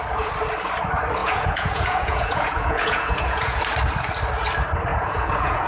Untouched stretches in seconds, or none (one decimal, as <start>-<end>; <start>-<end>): 0.0-1.2; 3.6-4.9